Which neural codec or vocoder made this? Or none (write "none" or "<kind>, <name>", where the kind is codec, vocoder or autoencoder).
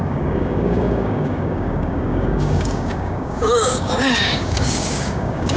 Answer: codec, DAC